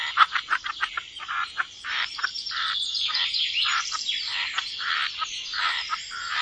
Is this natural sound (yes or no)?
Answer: no